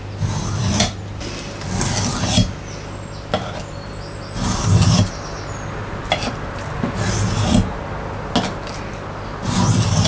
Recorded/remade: recorded